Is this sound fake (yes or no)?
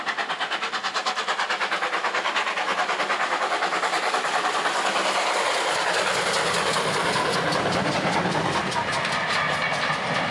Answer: no